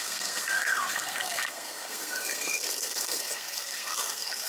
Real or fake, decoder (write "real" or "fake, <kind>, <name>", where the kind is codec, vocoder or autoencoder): fake, codec, SNAC